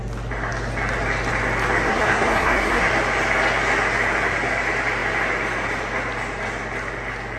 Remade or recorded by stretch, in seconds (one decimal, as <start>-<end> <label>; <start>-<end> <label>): 0.0-1.9 recorded; 1.9-2.9 remade; 2.9-7.4 recorded